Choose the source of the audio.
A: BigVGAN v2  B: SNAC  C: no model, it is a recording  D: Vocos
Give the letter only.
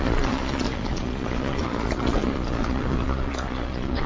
D